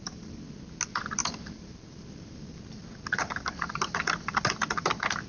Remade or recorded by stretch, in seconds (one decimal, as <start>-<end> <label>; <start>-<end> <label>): 0.0-1.2 recorded; 1.2-4.4 remade; 4.4-5.3 recorded